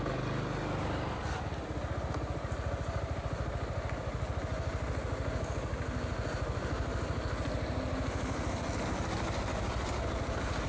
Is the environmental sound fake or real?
real